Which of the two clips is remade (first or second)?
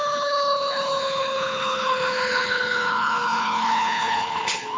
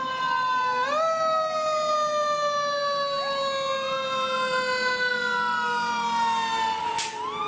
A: first